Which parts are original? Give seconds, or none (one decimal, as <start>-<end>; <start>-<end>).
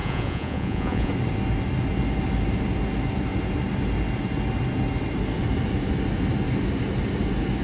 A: 1.1-7.6